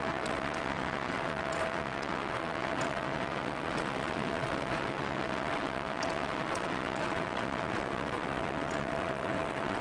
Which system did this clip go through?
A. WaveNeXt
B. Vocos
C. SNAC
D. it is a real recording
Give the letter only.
A